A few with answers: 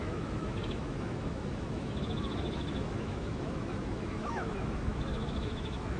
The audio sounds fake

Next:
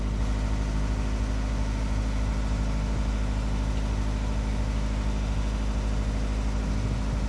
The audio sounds real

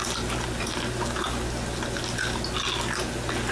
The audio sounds real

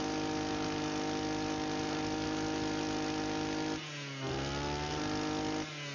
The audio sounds real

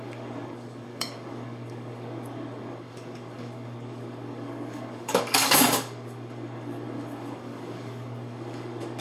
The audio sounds fake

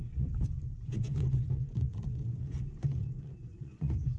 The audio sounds fake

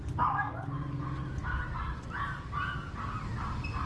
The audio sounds real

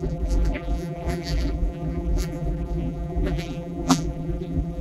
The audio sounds fake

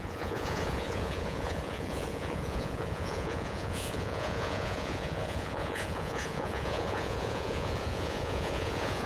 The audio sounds fake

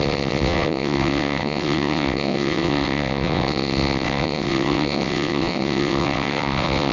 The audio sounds fake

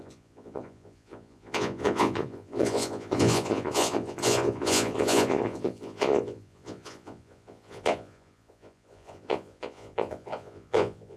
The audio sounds fake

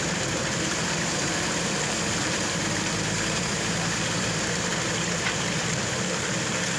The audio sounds fake